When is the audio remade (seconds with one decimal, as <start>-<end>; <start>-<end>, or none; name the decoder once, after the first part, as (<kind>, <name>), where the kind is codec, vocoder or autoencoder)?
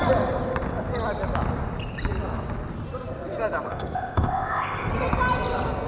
3.7-4.9 (codec, ZipCodec)